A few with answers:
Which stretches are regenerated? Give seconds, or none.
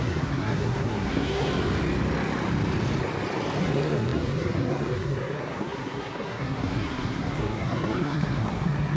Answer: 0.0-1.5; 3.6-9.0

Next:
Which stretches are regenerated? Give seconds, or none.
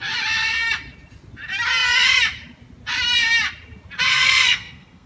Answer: 4.1-5.1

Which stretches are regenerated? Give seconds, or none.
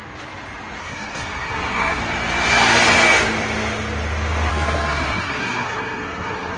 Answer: 0.8-2.0; 4.5-6.6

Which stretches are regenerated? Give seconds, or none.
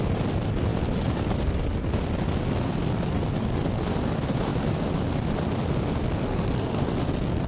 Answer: 6.2-6.8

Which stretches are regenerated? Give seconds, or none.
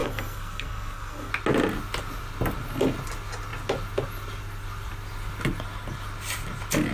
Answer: 0.0-1.3